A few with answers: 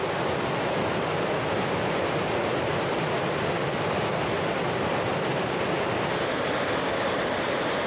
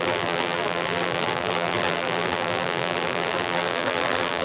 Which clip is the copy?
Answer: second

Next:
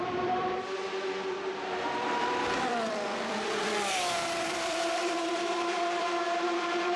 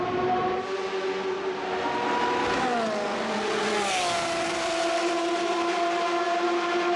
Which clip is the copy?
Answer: first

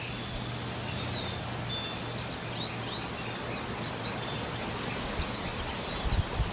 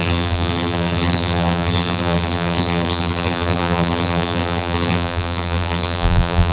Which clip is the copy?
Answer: second